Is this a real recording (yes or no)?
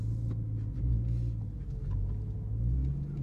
yes